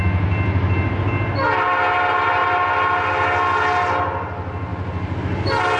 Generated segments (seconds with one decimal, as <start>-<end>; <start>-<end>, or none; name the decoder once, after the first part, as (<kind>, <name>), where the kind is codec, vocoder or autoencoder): none

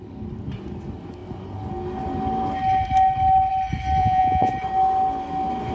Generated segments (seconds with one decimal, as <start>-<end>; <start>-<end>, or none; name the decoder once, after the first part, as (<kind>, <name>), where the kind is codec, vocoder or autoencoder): 4.0-4.5 (vocoder, Vocos)

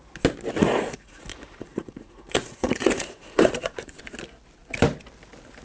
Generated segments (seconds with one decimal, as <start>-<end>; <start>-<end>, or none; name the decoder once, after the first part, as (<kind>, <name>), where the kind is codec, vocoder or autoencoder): 0.6-4.0 (vocoder, Vocos)

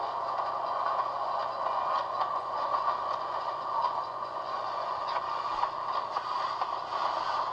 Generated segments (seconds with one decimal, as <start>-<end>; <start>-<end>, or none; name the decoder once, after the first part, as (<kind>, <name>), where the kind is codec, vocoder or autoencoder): 0.0-5.5 (vocoder, Vocos)

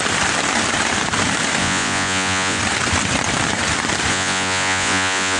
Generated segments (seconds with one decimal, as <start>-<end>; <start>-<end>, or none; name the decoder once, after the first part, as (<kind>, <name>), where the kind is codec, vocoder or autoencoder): 1.6-2.6 (vocoder, Vocos); 4.1-5.4